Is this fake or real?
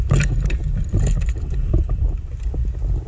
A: fake